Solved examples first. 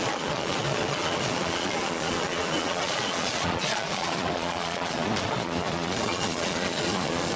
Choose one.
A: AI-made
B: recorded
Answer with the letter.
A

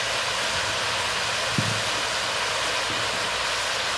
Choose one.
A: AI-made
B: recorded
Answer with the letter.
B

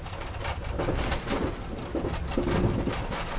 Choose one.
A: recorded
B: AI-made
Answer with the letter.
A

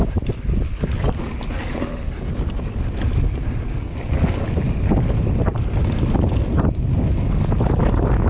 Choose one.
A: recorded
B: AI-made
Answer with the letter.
A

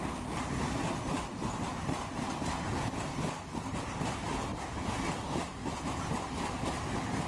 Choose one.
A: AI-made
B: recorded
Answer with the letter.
B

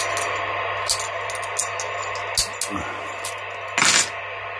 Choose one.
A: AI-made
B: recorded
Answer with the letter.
B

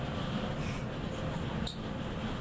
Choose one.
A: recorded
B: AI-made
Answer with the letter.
A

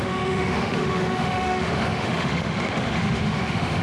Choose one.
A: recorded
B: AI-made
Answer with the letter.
B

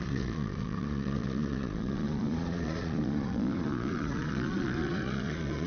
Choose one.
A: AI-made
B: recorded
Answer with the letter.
A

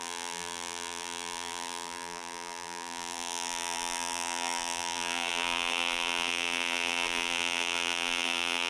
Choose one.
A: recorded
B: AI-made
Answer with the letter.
B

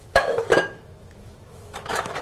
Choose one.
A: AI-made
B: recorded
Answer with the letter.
A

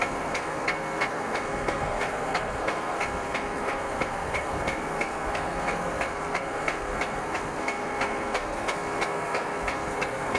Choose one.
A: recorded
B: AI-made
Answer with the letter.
B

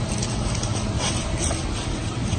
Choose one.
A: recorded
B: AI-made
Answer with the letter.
A